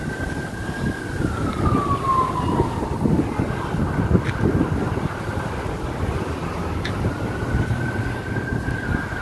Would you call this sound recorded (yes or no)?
yes